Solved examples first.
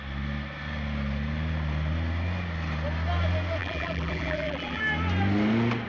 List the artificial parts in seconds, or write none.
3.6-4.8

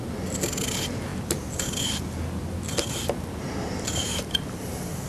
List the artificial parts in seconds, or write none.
none

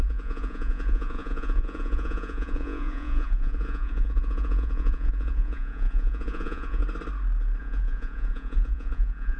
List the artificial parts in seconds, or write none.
0.0-6.8; 7.6-9.4

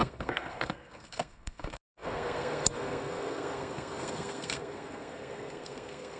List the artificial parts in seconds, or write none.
0.0-6.2

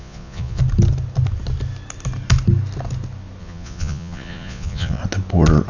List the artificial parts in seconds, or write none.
0.0-0.6; 3.4-5.0

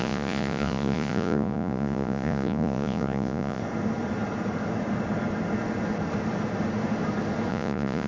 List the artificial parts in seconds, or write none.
0.0-3.6; 7.5-8.1